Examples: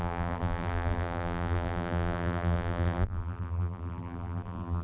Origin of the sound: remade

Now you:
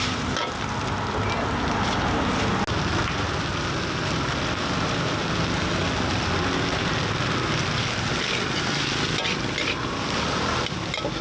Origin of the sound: recorded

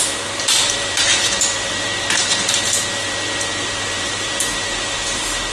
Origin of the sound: remade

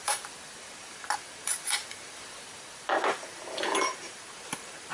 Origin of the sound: remade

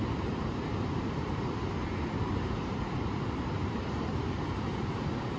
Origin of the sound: remade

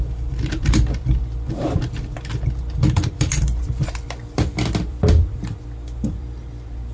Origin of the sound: remade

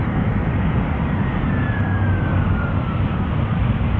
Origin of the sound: remade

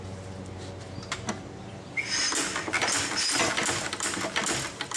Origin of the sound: recorded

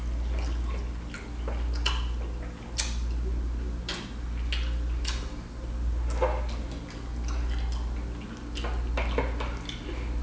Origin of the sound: recorded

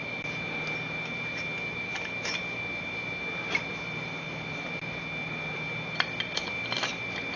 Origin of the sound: remade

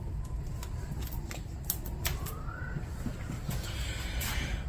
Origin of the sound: recorded